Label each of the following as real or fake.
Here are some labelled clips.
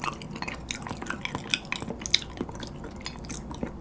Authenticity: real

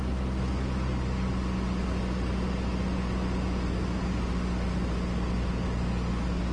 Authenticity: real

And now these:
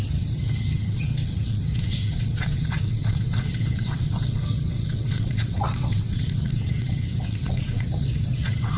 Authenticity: fake